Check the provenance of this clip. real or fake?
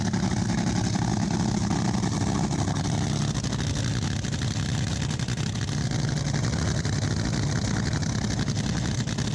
real